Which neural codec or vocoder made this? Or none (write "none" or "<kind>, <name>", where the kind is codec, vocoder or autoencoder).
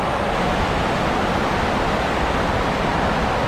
none